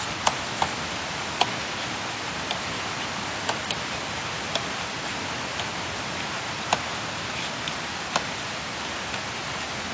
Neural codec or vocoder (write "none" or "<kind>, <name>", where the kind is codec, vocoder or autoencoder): none